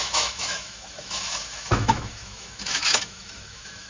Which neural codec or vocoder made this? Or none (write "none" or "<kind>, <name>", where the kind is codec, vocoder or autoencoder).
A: autoencoder, DAC-VAE